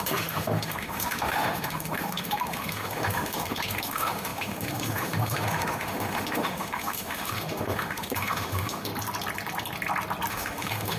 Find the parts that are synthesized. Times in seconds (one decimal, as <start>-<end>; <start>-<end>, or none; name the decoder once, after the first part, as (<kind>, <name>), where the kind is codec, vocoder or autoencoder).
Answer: 0.0-8.9 (autoencoder, DAC-VAE); 10.3-11.0